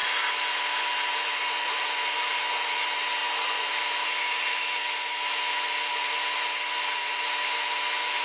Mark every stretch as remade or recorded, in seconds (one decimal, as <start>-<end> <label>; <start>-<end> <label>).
0.0-8.2 recorded